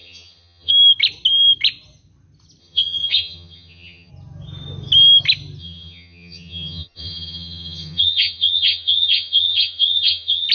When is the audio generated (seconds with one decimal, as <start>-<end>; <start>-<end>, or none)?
0.0-0.7; 2.6-4.1; 5.6-10.5